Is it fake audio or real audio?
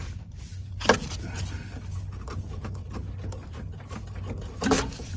real